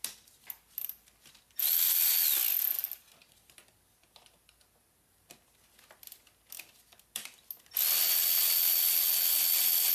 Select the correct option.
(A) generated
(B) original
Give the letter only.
B